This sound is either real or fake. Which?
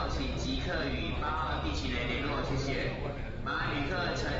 real